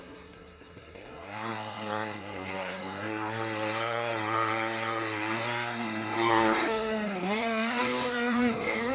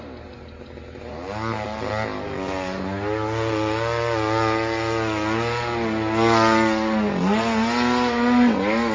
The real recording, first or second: second